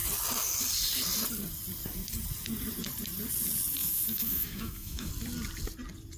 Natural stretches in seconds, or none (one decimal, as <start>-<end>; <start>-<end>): 0.0-3.8; 5.1-6.2